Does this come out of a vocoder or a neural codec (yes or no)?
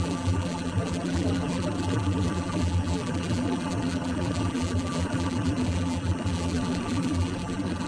yes